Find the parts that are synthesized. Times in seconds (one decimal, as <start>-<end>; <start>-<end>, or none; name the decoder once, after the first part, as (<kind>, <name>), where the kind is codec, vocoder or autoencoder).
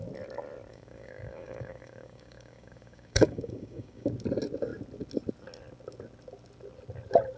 0.7-4.1 (codec, DAC)